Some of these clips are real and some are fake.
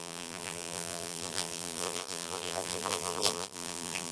fake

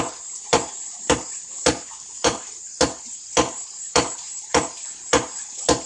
fake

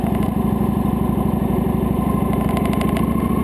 real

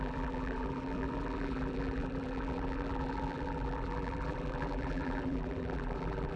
fake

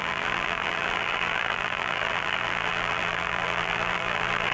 fake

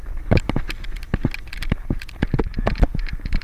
real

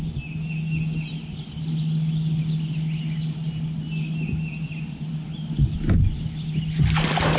real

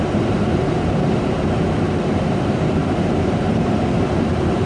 fake